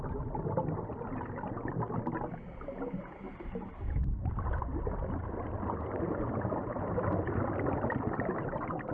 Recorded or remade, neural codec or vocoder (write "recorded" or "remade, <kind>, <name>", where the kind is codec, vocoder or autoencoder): recorded